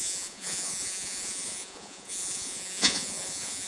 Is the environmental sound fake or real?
fake